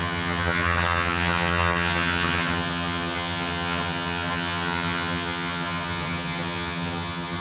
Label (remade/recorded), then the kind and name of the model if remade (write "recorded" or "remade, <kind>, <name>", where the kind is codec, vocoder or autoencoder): remade, vocoder, HiFi-GAN